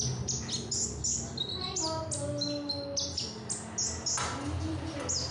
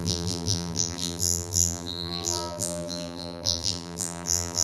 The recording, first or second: first